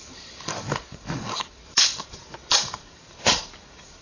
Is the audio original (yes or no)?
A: no